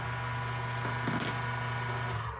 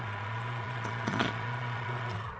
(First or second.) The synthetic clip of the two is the second